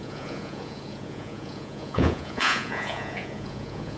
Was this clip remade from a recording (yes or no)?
yes